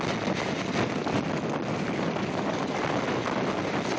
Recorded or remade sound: recorded